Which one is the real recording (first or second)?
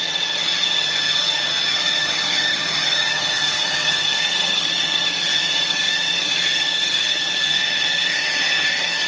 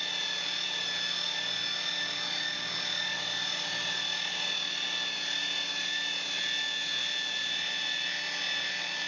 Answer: second